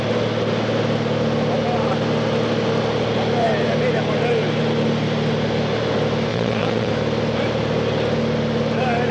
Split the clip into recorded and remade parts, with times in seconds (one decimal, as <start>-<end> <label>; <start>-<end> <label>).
0.0-6.3 recorded; 6.3-6.9 remade; 6.9-9.1 recorded